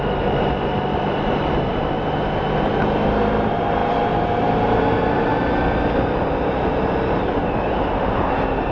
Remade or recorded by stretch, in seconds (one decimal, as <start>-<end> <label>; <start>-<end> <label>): 0.0-8.7 recorded